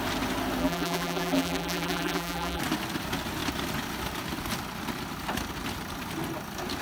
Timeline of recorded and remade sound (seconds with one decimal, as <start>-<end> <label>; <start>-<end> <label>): 0.0-0.6 recorded; 0.6-2.6 remade; 2.6-6.8 recorded